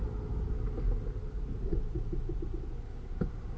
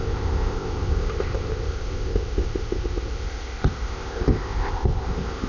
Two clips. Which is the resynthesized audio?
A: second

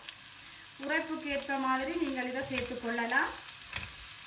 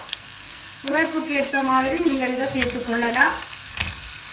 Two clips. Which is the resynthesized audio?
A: second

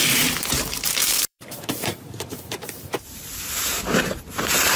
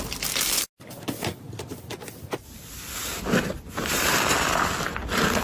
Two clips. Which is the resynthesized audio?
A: first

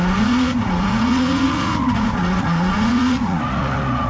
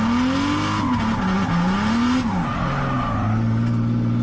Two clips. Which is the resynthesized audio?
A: first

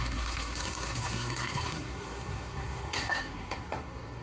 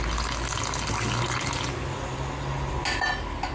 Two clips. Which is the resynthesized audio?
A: first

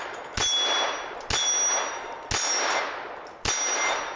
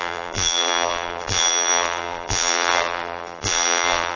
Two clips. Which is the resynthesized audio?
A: second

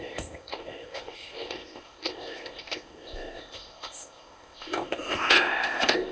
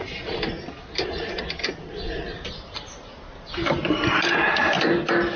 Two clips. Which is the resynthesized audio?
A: first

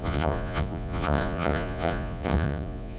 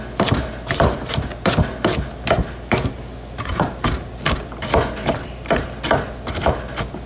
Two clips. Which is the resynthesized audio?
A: first